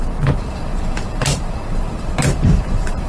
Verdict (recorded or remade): remade